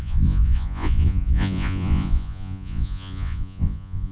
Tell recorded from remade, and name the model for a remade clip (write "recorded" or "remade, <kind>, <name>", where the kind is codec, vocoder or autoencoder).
remade, vocoder, Vocos